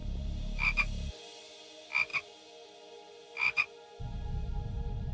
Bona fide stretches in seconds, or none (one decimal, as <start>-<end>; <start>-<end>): 0.0-5.1